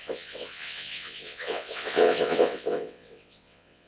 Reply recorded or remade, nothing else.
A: remade